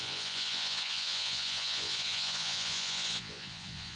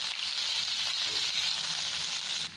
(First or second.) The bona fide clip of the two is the second